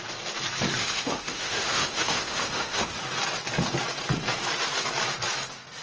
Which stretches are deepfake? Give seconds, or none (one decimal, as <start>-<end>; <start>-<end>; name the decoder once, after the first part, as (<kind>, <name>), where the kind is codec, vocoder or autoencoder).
0.8-2.9 (autoencoder, DAC-VAE)